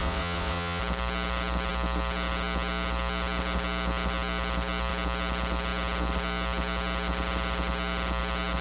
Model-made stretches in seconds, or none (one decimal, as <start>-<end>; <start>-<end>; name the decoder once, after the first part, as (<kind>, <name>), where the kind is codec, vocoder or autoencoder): 0.0-0.8 (vocoder, WaveNeXt)